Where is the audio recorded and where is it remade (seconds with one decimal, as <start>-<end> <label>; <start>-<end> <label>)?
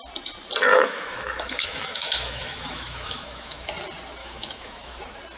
0.0-0.7 recorded; 0.7-3.7 remade; 3.7-4.2 recorded; 4.2-5.0 remade; 5.0-5.4 recorded